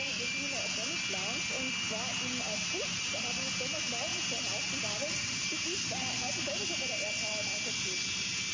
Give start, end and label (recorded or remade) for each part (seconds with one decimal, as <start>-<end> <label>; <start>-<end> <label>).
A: 0.0-8.5 recorded